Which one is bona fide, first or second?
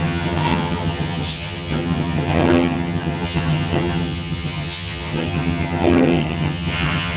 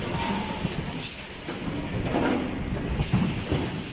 second